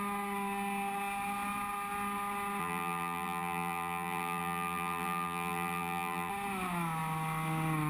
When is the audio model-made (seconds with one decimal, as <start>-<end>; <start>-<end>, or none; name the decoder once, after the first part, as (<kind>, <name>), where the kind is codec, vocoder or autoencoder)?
2.6-6.3 (vocoder, BigVGAN v2)